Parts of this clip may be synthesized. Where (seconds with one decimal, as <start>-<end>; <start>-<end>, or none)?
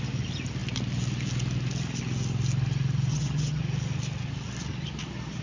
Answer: 3.1-3.6